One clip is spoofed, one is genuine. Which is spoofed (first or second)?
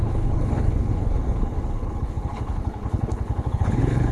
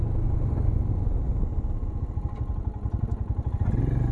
first